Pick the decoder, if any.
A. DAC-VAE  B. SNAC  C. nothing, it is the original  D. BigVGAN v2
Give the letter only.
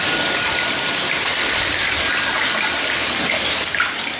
D